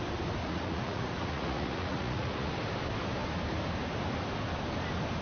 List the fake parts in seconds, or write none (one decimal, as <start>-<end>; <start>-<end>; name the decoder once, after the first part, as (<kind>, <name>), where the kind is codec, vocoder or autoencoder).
0.4-2.5 (vocoder, Vocos)